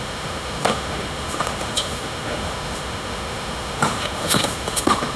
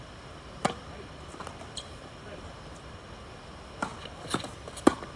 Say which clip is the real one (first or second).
second